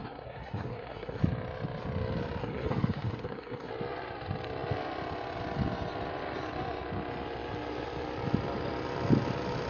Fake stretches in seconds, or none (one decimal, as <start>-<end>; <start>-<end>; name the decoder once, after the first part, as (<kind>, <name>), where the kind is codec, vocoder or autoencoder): 0.0-1.2 (codec, SNAC); 2.4-3.7